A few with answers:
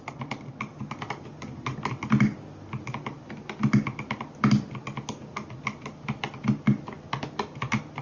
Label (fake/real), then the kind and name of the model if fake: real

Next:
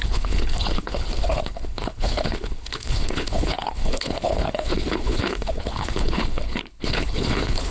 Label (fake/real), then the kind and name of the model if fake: fake, codec, HILCodec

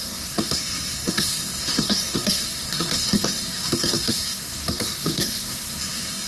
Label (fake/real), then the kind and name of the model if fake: fake, codec, SNAC